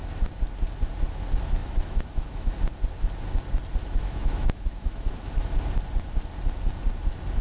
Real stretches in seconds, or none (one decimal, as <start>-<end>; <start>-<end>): 0.0-1.6; 2.5-3.8; 5.4-7.4